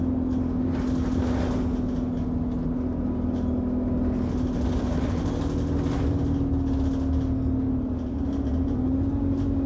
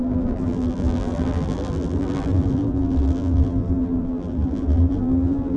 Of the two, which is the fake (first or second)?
second